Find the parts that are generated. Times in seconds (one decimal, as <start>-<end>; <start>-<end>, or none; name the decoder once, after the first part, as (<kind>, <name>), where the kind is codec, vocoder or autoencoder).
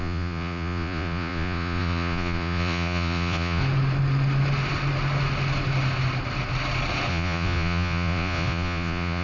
0.0-3.6 (vocoder, Vocos); 7.1-9.2